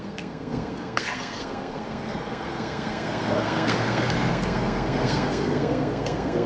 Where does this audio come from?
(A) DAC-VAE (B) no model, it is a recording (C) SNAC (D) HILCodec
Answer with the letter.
C